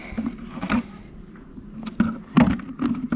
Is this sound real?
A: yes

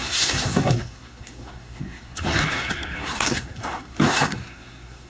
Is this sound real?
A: no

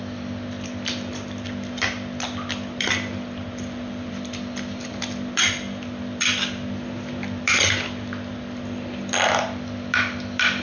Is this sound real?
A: no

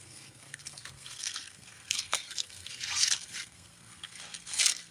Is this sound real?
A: no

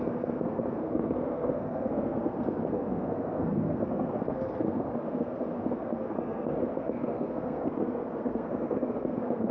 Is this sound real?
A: no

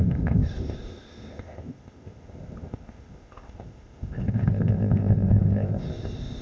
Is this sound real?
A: no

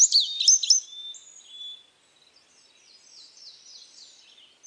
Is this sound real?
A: yes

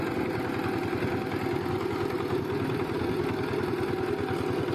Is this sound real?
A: yes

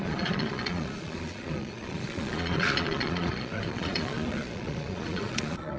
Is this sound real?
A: no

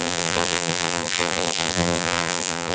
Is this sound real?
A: no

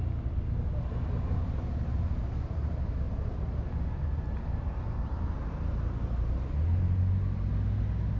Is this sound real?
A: yes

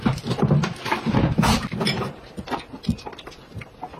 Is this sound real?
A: yes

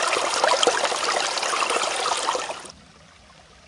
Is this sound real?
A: yes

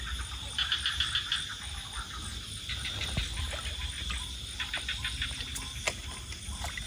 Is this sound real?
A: yes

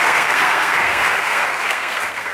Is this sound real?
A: no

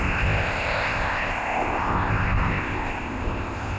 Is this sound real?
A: no